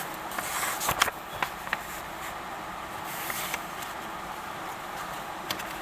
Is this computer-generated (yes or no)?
yes